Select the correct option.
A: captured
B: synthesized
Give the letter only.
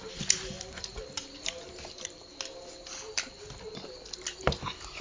A